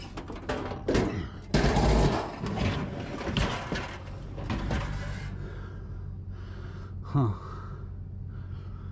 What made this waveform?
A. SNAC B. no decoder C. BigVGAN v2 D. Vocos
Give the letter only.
B